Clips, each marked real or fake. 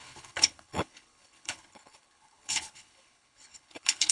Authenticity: fake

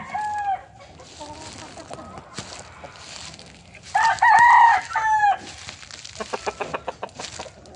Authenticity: real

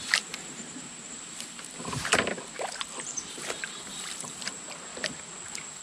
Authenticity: fake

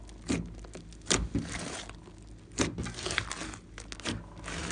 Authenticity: real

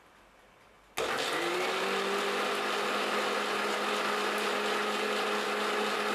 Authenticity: real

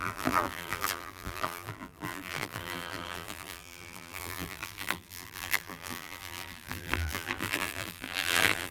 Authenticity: fake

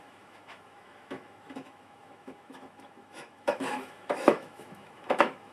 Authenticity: fake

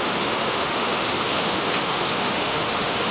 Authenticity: fake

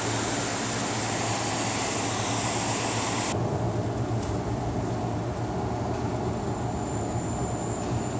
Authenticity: fake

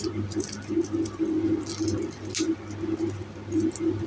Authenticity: real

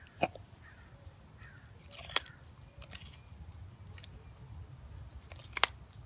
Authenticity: real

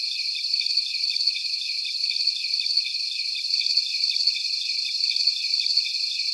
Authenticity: real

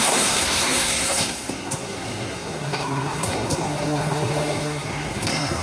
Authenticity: fake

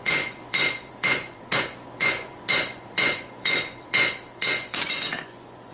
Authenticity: fake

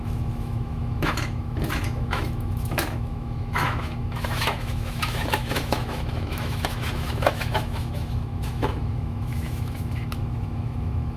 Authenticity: fake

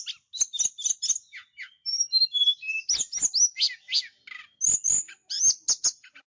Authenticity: real